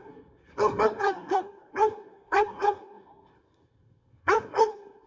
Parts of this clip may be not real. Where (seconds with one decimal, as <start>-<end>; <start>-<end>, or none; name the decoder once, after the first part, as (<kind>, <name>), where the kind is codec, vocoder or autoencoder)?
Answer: 0.0-5.1 (codec, SNAC)